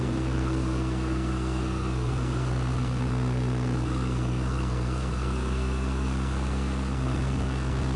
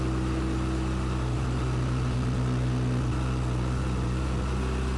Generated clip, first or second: first